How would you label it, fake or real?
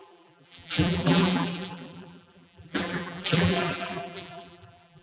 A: fake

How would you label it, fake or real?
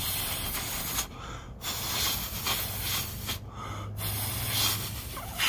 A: real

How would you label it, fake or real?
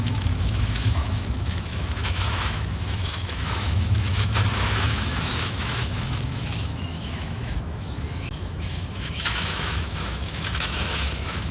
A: fake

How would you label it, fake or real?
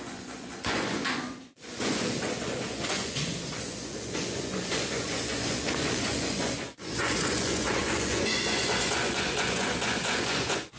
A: fake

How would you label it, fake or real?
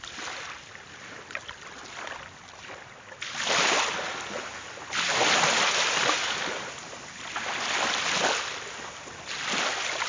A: real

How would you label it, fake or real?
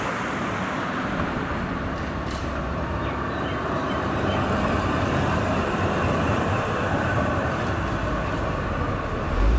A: real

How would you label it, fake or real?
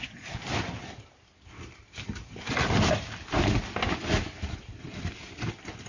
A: real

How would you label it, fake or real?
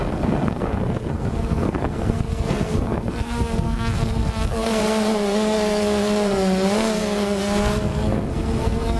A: fake